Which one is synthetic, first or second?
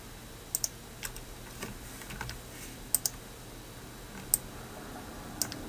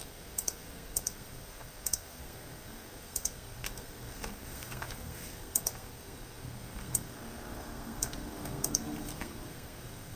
second